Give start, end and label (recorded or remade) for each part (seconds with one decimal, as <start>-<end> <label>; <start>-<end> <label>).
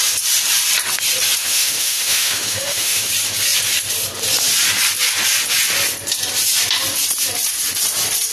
0.0-1.4 recorded; 1.4-3.1 remade; 3.1-8.3 recorded